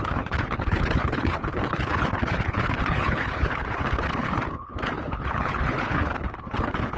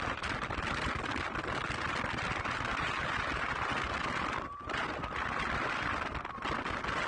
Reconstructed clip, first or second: first